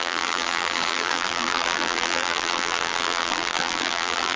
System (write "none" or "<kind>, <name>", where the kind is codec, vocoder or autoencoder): vocoder, BigVGAN v2